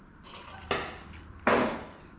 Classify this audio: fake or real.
fake